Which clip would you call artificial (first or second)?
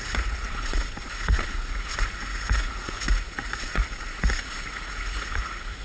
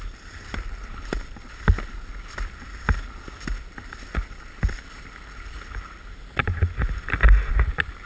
first